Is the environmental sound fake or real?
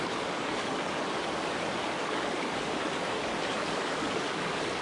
fake